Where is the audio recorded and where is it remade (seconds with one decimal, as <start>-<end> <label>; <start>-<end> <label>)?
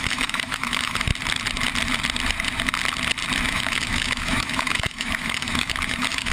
0.0-1.1 remade; 1.1-3.5 recorded; 3.5-6.3 remade